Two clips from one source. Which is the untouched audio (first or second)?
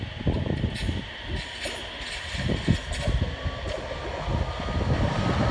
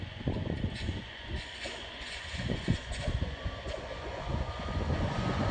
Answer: first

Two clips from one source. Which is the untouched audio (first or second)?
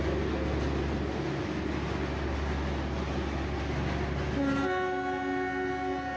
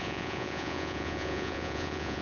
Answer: first